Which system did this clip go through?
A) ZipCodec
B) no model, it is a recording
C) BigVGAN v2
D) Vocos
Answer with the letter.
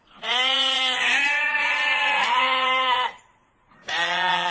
D